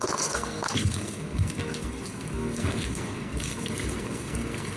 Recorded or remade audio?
remade